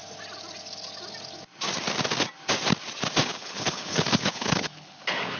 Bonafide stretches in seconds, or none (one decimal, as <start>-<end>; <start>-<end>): 0.0-3.2